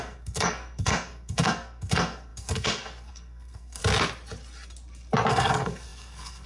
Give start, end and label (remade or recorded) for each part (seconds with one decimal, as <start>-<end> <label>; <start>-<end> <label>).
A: 0.0-3.8 remade; 3.8-5.3 recorded; 5.3-6.5 remade

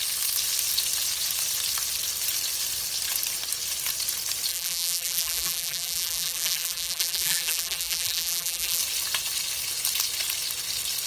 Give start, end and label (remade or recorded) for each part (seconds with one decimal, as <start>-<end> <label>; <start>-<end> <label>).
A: 0.0-4.5 recorded; 4.5-8.8 remade; 8.8-11.1 recorded

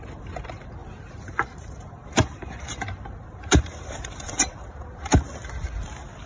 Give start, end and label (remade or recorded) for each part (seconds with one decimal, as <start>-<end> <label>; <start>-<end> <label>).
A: 0.0-5.1 remade; 5.1-6.3 recorded

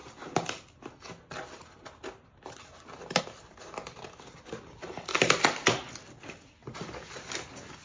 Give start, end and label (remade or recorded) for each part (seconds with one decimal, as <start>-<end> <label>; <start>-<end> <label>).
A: 0.0-3.2 recorded; 3.2-6.6 remade; 6.6-7.8 recorded